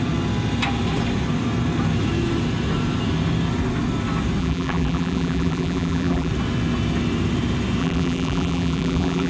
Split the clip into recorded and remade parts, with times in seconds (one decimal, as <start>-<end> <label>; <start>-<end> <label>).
0.0-4.4 recorded; 4.4-6.3 remade; 6.3-7.8 recorded; 7.8-9.3 remade